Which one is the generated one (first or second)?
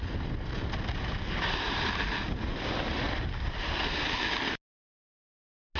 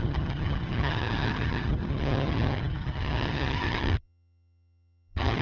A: second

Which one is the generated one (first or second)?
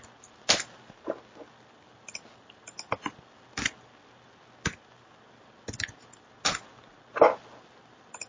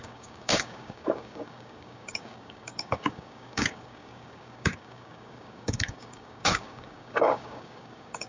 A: second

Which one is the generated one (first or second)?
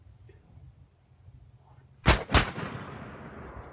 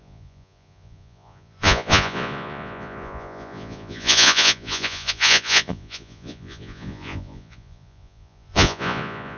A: second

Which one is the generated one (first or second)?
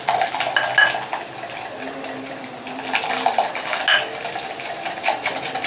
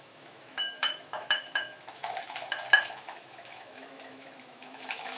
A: second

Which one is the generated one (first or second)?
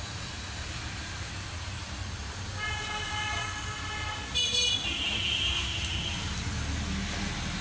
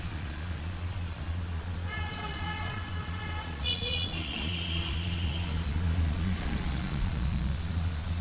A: second